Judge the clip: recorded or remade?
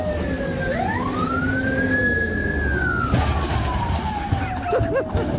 recorded